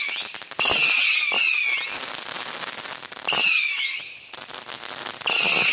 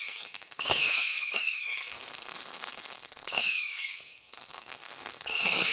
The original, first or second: first